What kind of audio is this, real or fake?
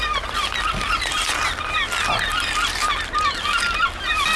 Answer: real